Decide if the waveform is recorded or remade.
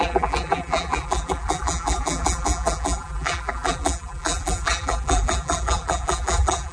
remade